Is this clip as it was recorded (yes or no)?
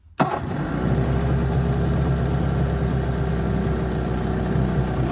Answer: yes